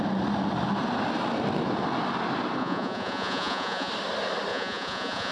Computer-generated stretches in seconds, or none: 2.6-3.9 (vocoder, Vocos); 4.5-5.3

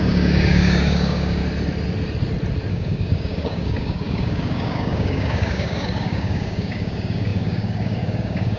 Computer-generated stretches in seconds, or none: 0.0-1.4 (codec, DAC); 2.7-8.6

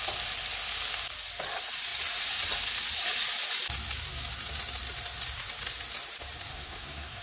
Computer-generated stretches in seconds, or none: 6.5-7.2 (codec, SNAC)

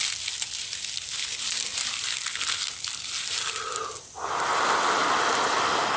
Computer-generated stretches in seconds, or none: none

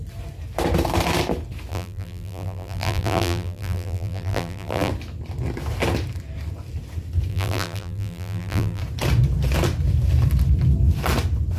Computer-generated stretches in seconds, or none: 1.7-4.9 (vocoder, BigVGAN v2); 7.3-8.8